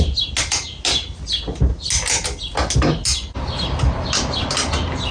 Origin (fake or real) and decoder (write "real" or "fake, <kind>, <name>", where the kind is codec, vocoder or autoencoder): real